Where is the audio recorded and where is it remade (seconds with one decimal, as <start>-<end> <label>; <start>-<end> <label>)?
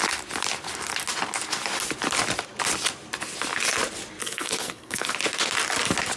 0.0-4.2 recorded; 4.2-5.1 remade; 5.1-6.2 recorded